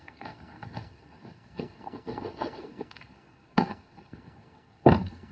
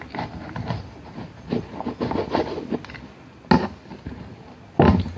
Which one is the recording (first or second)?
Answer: second